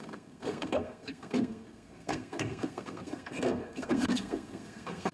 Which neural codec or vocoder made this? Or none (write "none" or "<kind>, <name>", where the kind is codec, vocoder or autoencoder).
codec, SNAC